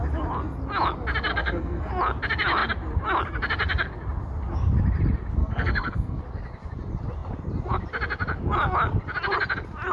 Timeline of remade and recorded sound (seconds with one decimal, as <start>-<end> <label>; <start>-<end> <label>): 0.0-1.3 recorded; 1.3-1.9 remade; 1.9-5.4 recorded; 5.4-6.2 remade; 6.2-9.9 recorded